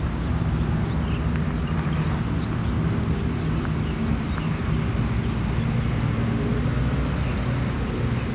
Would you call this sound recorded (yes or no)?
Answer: yes